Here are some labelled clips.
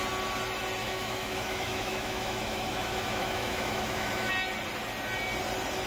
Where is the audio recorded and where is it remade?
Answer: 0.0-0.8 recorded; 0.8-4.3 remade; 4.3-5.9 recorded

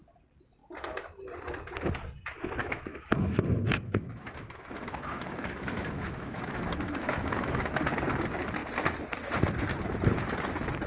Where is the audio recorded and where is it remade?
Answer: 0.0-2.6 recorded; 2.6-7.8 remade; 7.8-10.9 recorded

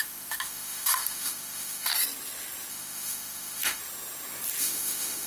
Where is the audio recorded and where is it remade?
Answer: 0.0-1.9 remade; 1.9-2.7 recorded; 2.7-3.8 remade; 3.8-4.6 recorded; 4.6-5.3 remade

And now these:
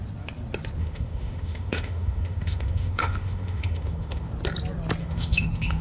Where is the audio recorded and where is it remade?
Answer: 0.0-0.8 recorded; 0.8-4.3 remade; 4.3-5.0 recorded; 5.0-5.8 remade

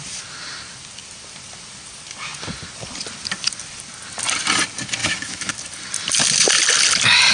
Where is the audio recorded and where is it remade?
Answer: 0.0-5.0 recorded; 5.0-5.5 remade; 5.5-7.3 recorded